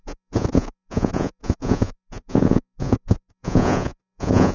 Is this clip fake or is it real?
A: fake